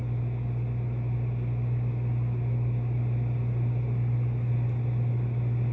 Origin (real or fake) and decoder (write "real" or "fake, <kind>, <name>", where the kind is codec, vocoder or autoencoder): real